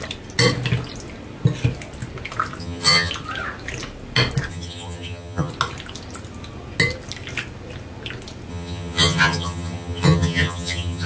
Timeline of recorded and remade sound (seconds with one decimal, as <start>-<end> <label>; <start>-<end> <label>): 0.0-2.6 recorded; 2.6-3.1 remade; 3.1-4.5 recorded; 4.5-5.5 remade; 5.5-8.5 recorded; 8.5-11.1 remade